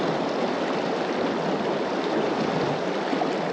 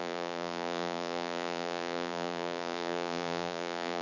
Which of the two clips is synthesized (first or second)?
second